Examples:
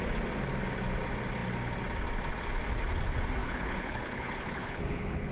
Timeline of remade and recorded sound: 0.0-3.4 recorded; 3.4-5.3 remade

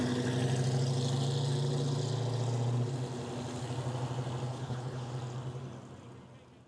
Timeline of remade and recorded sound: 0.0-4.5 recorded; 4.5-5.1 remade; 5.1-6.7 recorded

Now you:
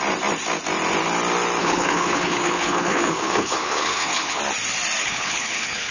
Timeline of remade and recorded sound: 0.0-1.6 recorded; 1.6-4.4 remade; 4.4-5.0 recorded; 5.0-5.9 remade